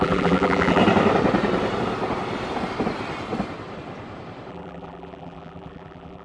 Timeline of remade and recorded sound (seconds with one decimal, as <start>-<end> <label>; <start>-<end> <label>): 0.0-0.8 remade; 0.8-4.5 recorded; 4.5-6.2 remade